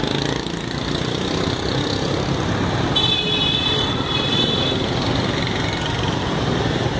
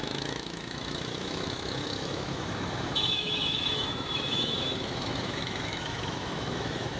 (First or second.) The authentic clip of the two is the first